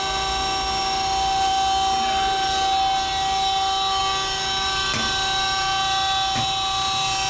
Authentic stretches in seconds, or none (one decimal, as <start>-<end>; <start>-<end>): 0.0-7.3